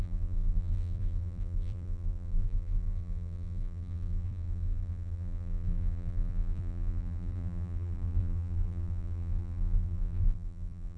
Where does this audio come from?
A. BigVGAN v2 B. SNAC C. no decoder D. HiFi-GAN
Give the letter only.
A